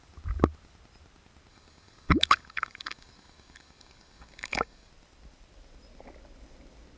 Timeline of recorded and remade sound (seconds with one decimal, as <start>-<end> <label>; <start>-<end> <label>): 0.0-1.5 recorded; 1.5-4.9 remade; 4.9-7.0 recorded